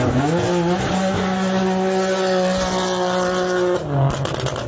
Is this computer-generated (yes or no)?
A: no